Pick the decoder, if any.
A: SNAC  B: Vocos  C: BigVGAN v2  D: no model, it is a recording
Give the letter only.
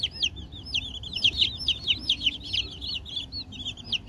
D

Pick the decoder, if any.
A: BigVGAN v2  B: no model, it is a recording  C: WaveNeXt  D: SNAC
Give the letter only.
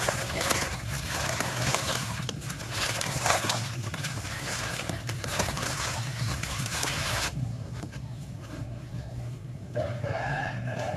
D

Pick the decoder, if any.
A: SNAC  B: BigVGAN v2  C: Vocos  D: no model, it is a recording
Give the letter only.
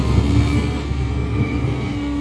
A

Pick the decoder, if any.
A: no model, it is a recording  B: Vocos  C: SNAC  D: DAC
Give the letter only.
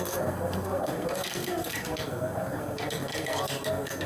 C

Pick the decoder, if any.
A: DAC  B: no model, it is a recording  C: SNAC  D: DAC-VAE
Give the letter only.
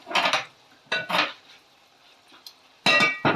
B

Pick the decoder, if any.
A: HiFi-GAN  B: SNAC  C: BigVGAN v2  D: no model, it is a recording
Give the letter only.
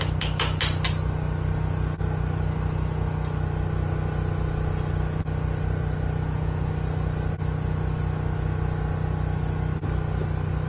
D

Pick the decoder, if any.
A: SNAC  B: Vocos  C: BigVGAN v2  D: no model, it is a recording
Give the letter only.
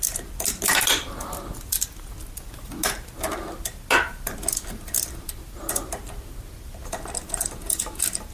D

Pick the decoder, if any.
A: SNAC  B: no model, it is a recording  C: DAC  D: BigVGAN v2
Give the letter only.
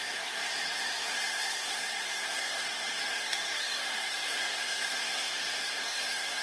A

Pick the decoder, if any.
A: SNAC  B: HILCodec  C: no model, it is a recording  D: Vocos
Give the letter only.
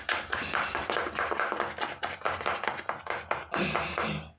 C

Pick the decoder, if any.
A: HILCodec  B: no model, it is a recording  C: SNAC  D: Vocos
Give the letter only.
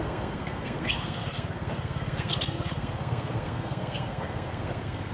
C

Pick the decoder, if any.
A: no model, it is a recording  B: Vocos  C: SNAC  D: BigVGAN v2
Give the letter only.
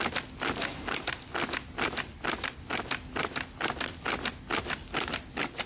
A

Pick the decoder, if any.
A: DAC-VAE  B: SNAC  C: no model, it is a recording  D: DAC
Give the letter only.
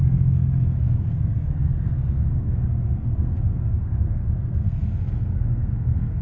B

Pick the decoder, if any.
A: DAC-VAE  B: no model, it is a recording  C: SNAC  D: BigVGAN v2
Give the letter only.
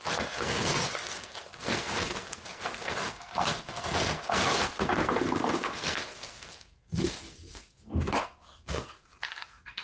C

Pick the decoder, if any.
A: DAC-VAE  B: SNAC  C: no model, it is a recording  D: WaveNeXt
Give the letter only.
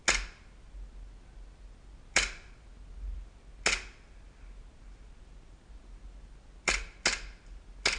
C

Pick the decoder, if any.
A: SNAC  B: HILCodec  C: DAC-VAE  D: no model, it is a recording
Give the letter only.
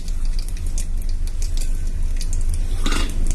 D